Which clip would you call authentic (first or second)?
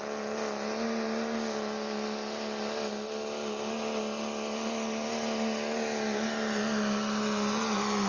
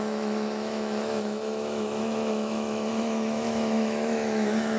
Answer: first